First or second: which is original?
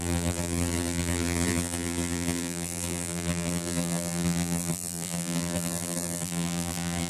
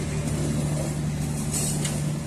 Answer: second